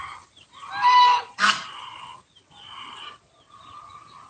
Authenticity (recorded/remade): recorded